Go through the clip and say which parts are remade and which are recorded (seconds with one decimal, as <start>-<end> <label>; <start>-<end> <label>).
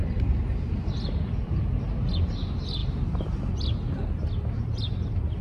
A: 0.0-1.9 remade; 1.9-5.4 recorded